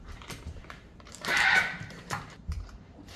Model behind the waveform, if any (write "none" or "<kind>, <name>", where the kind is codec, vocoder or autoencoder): vocoder, BigVGAN v2